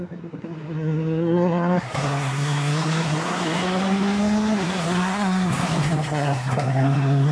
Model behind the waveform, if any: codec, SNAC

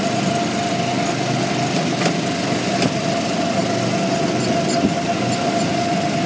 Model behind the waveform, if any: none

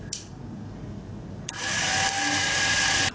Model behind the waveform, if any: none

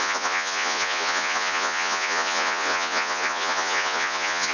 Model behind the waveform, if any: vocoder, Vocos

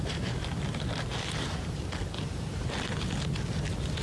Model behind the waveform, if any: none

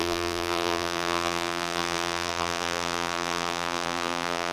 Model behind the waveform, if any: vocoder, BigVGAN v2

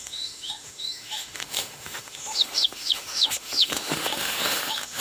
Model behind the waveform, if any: autoencoder, DAC-VAE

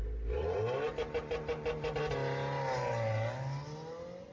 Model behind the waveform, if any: none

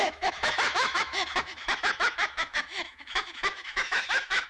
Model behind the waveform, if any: autoencoder, DAC-VAE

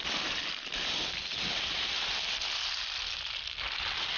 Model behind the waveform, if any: none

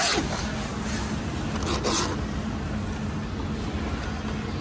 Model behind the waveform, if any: none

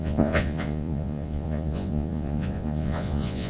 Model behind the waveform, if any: vocoder, Vocos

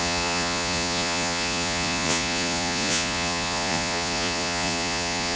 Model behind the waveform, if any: vocoder, Vocos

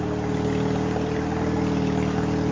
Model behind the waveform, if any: none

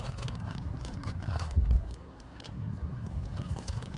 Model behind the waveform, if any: codec, SNAC